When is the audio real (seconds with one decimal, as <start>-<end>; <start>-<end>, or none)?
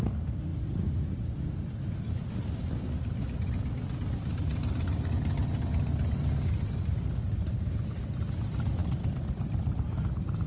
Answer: 0.0-10.5